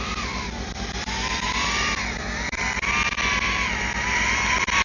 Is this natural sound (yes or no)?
yes